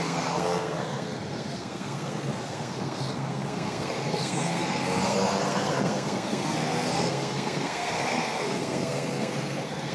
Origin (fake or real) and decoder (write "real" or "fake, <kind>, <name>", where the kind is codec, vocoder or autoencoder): fake, codec, SNAC